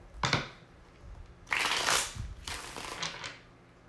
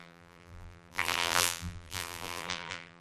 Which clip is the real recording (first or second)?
first